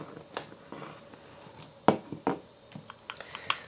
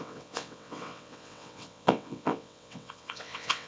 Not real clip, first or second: second